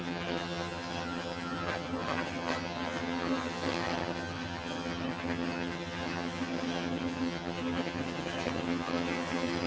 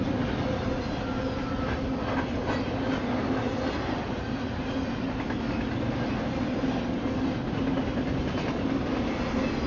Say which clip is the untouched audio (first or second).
second